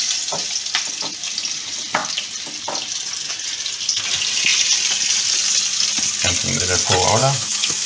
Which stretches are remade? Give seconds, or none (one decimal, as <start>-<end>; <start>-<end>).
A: 7.2-7.9